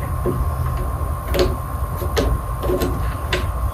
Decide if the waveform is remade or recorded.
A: recorded